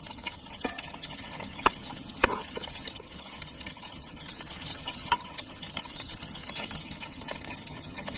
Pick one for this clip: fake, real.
fake